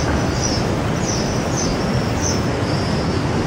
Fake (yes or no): no